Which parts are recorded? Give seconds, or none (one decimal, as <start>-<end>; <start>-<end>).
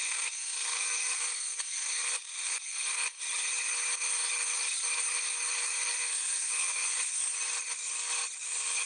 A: 3.2-5.9; 7.2-8.9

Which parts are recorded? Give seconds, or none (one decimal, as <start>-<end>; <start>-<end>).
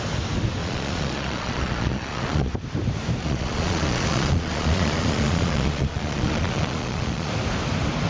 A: 0.0-0.6; 2.5-3.2; 7.3-8.1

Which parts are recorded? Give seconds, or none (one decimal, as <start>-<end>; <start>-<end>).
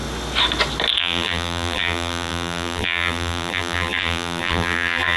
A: 0.0-1.0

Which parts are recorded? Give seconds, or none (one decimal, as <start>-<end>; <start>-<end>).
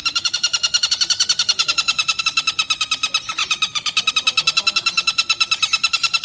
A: 2.2-3.4; 4.1-6.2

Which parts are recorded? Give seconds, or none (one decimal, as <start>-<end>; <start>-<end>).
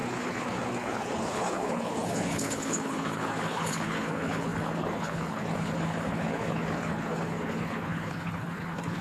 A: none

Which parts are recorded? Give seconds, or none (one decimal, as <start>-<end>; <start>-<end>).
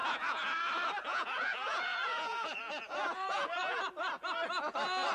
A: 0.7-1.1; 3.9-5.1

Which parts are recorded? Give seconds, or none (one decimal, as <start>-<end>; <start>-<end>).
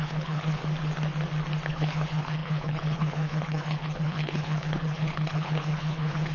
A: 0.6-1.7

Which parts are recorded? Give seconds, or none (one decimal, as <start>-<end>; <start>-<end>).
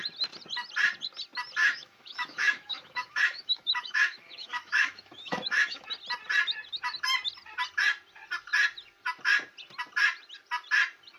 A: 0.0-1.6; 5.9-11.2